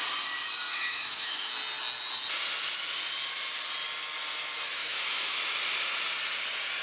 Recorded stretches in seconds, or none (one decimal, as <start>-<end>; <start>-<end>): 0.0-0.7; 1.5-4.8; 5.4-6.8